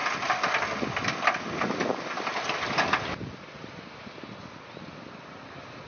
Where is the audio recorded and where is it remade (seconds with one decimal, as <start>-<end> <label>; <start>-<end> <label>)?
0.0-5.9 recorded